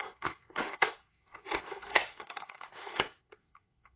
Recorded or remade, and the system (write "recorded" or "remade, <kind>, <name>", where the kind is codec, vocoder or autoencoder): remade, codec, SNAC